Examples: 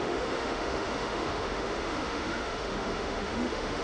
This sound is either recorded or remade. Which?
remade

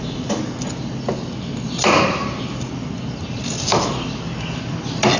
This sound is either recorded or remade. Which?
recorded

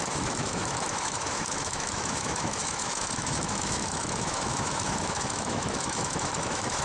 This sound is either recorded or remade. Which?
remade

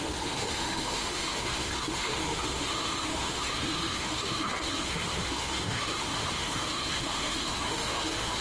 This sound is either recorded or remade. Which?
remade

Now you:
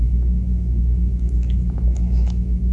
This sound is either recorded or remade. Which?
remade